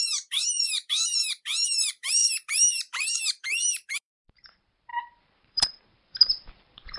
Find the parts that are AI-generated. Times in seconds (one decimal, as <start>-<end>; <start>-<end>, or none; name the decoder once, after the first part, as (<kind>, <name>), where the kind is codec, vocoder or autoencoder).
0.0-7.0 (vocoder, BigVGAN v2)